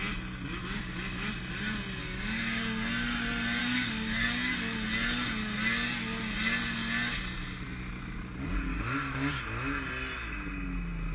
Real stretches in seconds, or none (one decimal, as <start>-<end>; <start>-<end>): 0.0-2.0; 2.9-3.6; 4.6-8.7; 9.4-11.1